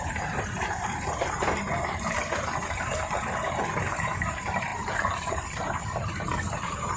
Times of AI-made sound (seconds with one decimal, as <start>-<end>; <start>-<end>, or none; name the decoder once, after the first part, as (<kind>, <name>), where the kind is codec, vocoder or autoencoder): 0.0-7.0 (vocoder, BigVGAN v2)

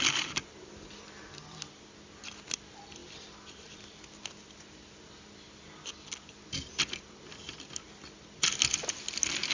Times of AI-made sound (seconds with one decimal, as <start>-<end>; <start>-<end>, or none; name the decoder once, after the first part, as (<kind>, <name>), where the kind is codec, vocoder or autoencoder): none